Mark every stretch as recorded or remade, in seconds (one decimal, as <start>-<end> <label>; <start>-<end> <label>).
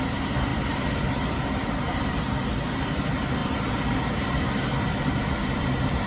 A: 0.0-0.5 recorded; 0.5-2.0 remade; 2.0-3.4 recorded; 3.4-4.5 remade; 4.5-6.1 recorded